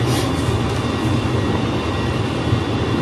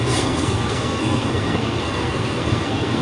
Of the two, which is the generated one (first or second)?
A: second